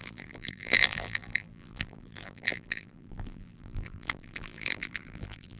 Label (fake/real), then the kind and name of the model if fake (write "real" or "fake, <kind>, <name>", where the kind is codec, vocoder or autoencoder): fake, vocoder, BigVGAN v2